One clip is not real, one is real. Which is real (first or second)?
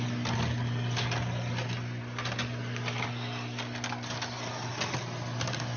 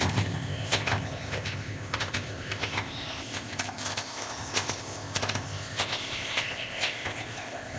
first